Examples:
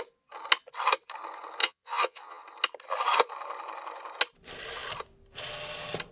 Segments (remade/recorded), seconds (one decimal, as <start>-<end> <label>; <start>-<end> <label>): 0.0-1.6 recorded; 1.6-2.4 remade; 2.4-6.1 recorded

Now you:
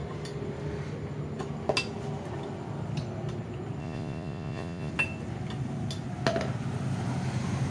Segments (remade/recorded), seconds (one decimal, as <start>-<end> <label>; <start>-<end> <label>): 0.0-3.8 recorded; 3.8-4.9 remade; 4.9-7.7 recorded

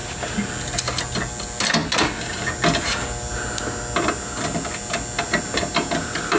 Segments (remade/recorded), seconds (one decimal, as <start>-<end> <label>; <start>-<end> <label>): 0.0-6.4 recorded